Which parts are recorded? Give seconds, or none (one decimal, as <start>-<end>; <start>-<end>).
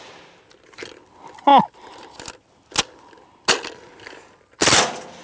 0.0-5.2